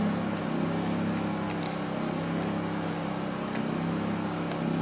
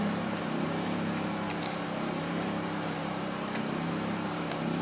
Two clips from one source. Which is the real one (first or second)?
first